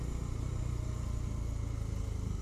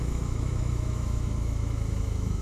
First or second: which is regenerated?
second